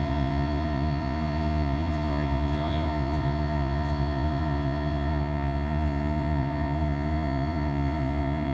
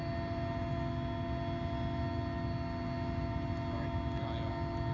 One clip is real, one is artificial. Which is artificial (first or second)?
first